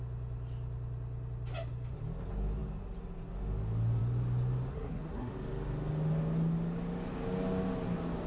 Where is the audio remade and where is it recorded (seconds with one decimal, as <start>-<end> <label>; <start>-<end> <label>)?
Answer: 0.0-4.7 recorded; 4.7-5.3 remade; 5.3-8.3 recorded